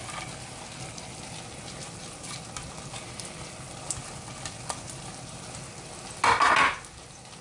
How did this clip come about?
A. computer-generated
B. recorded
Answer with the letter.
B